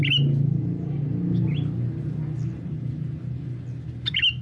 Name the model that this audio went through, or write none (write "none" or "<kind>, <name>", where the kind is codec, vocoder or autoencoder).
none